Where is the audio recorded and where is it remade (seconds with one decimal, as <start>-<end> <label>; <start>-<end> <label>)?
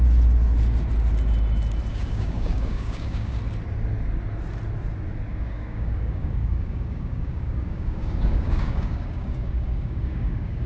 0.0-1.9 recorded; 1.9-3.4 remade; 3.4-5.3 recorded; 5.3-10.7 remade